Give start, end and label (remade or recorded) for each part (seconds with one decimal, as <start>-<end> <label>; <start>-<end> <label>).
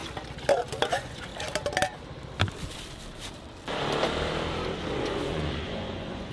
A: 0.0-0.9 recorded; 0.9-1.3 remade; 1.3-4.9 recorded; 4.9-6.3 remade